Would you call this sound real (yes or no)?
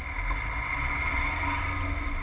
yes